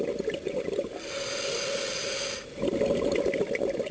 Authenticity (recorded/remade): recorded